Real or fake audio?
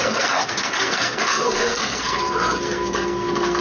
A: fake